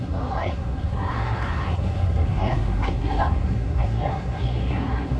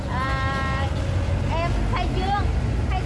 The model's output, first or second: first